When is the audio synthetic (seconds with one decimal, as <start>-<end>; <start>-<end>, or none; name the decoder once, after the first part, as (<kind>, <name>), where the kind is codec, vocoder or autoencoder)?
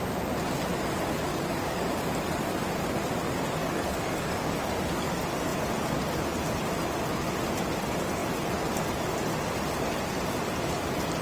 1.3-2.0 (codec, DAC); 3.6-5.1